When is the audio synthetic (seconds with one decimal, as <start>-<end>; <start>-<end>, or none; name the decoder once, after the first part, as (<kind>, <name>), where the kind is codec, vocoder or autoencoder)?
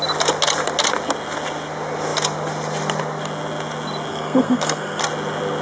4.1-5.0 (codec, SNAC)